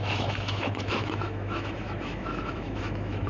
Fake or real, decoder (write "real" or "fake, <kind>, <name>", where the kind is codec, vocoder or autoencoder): fake, autoencoder, DAC-VAE